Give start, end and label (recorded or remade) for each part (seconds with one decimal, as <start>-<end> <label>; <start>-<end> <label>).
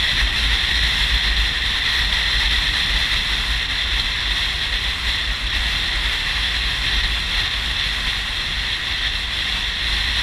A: 0.0-6.1 recorded; 6.1-6.8 remade; 6.8-10.2 recorded